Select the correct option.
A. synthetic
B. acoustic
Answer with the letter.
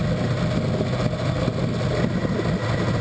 B